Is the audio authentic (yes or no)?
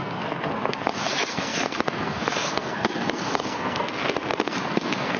no